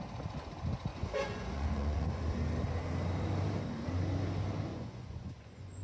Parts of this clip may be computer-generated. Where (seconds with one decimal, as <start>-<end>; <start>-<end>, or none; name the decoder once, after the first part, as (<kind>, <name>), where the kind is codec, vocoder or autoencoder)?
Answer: 0.9-2.2 (vocoder, Vocos); 4.7-5.8